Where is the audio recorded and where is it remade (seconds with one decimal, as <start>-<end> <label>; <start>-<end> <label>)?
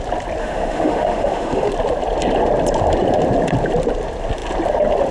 0.0-0.4 recorded; 0.4-1.7 remade; 1.7-5.1 recorded